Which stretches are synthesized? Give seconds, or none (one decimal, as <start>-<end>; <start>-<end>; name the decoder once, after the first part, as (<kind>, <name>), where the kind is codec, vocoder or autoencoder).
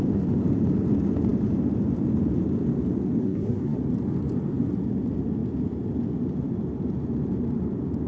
3.2-3.8 (codec, SNAC)